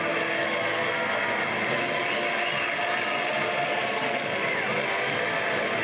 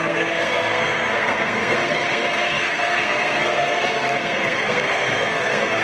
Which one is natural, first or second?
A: first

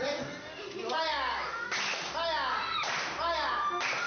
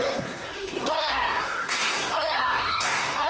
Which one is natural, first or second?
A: first